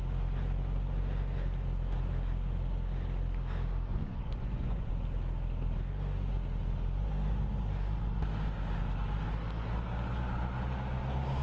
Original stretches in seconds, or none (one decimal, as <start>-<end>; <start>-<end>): 0.0-3.9; 4.9-11.4